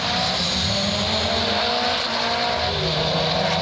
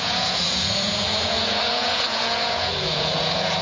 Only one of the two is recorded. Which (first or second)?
first